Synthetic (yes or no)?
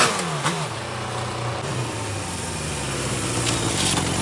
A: no